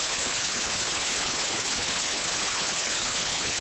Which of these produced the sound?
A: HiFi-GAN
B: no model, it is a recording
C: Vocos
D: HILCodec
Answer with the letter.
D